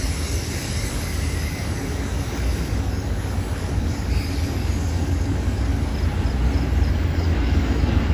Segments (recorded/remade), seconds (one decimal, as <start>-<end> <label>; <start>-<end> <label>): 0.0-5.9 remade; 5.9-6.9 recorded; 6.9-8.1 remade